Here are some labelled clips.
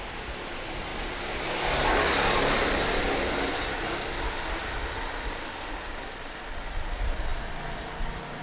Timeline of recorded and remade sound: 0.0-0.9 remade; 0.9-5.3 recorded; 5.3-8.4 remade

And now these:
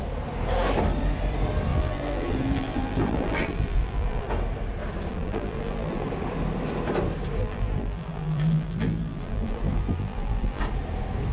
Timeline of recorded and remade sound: 0.0-1.7 recorded; 1.7-4.3 remade; 4.3-5.1 recorded; 5.1-6.1 remade; 6.1-7.4 recorded; 7.4-10.6 remade; 10.6-11.3 recorded

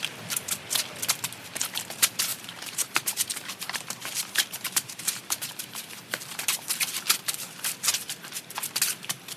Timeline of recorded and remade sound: 0.0-2.3 recorded; 2.3-6.6 remade; 6.6-9.4 recorded

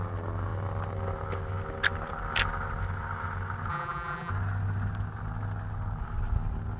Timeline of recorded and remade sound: 0.0-3.7 recorded; 3.7-4.3 remade; 4.3-6.8 recorded

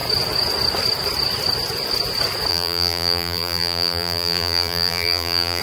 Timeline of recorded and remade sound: 0.0-2.5 recorded; 2.5-5.6 remade

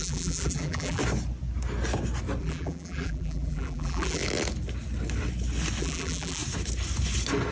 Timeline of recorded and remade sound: 0.0-1.0 remade; 1.0-2.4 recorded; 2.4-4.2 remade; 4.2-5.8 recorded; 5.8-6.4 remade; 6.4-7.5 recorded